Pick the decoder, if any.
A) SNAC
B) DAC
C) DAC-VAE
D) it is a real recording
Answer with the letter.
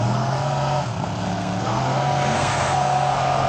A